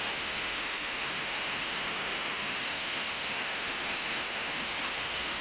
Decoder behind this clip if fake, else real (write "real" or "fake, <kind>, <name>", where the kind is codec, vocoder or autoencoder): fake, autoencoder, DAC-VAE